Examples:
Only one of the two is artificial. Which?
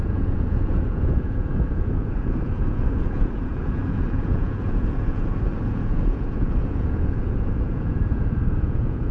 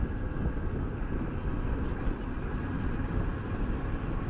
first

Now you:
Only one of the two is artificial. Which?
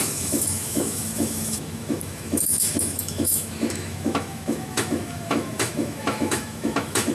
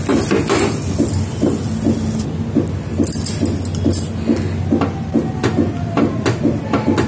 first